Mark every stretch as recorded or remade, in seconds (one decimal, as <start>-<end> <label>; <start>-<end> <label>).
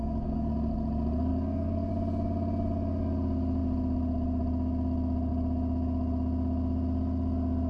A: 0.0-0.5 remade; 0.5-1.3 recorded; 1.3-1.9 remade; 1.9-7.7 recorded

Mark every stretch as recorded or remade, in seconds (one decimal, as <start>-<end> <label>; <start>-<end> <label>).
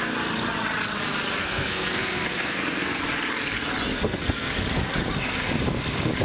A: 0.0-1.4 recorded; 1.4-3.0 remade; 3.0-3.9 recorded; 3.9-4.5 remade; 4.5-6.2 recorded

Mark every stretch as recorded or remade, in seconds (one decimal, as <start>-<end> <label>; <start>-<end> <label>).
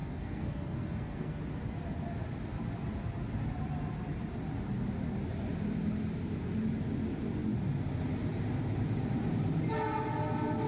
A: 0.0-1.4 remade; 1.4-10.7 recorded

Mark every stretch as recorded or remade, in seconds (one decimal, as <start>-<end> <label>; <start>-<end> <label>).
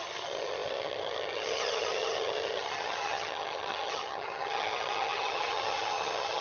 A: 0.0-6.4 remade